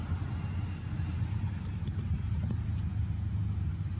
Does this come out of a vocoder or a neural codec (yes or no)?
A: no